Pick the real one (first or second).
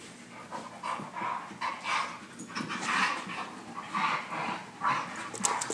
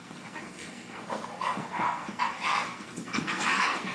first